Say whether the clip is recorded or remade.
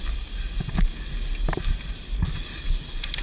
recorded